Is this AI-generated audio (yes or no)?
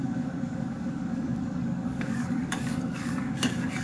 yes